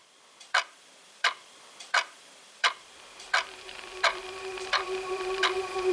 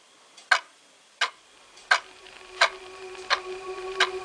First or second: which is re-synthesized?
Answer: first